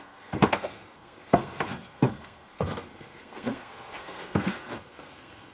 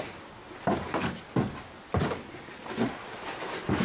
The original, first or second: second